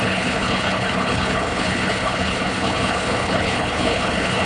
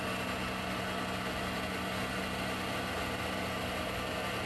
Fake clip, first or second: first